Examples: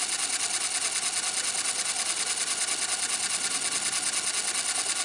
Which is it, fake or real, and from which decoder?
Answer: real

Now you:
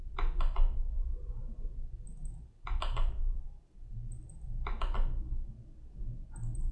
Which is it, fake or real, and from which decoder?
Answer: real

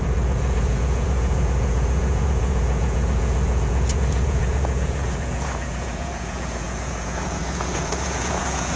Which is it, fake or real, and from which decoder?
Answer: fake, vocoder, Vocos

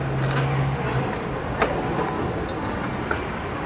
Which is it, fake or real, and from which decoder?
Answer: real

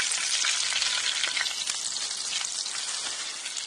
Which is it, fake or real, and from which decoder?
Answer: real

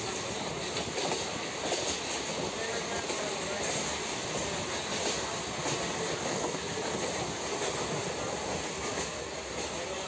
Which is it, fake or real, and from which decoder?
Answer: real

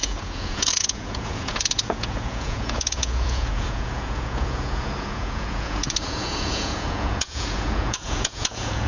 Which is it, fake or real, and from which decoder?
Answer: fake, vocoder, Vocos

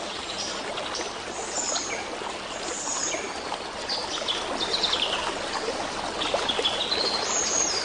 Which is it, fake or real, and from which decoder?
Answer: real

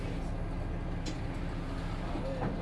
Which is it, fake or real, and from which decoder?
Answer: real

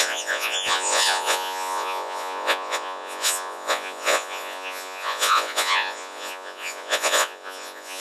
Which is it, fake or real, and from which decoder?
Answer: fake, vocoder, Vocos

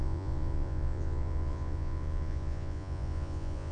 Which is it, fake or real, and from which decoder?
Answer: fake, vocoder, Vocos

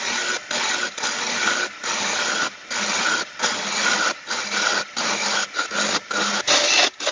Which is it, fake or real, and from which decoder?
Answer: real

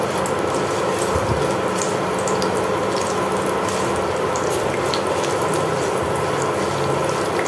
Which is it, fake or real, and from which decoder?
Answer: real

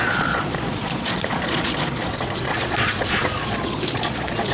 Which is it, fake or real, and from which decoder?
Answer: fake, vocoder, Vocos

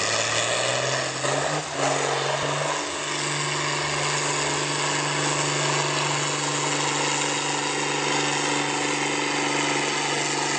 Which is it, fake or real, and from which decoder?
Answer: real